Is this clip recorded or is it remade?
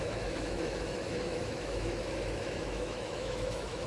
remade